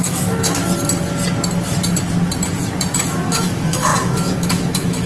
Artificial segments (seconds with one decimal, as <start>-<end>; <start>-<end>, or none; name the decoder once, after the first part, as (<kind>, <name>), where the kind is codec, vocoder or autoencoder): 0.0-0.6 (autoencoder, DAC-VAE); 3.3-5.1